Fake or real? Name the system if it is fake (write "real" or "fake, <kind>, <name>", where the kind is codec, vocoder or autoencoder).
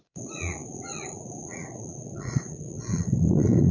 fake, vocoder, Vocos